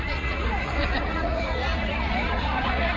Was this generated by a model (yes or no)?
yes